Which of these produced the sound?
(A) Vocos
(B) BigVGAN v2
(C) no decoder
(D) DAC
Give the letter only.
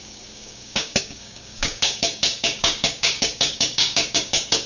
D